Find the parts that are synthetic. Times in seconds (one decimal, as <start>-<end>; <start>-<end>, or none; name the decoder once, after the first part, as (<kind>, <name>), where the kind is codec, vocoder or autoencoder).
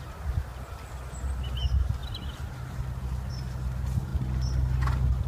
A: none